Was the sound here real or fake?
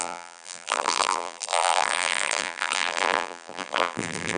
fake